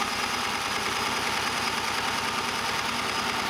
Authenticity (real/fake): real